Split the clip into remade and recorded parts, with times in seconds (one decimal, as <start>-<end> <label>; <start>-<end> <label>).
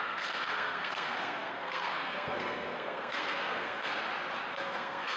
0.0-4.0 remade; 4.0-4.5 recorded; 4.5-5.2 remade